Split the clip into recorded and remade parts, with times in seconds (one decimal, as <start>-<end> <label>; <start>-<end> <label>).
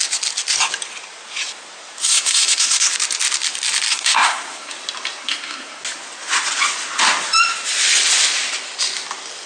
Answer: 0.0-2.0 recorded; 2.0-2.9 remade; 2.9-3.9 recorded; 3.9-4.7 remade; 4.7-5.2 recorded; 5.2-5.8 remade; 5.8-9.5 recorded